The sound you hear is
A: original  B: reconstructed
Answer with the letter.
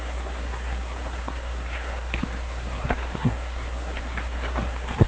B